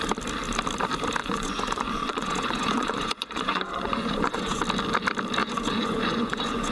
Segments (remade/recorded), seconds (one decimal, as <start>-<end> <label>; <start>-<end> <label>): 0.0-1.2 recorded; 1.2-4.6 remade; 4.6-5.4 recorded; 5.4-6.7 remade